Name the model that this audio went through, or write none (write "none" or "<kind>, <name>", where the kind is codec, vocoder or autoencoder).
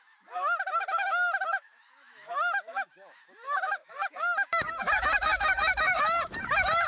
autoencoder, DAC-VAE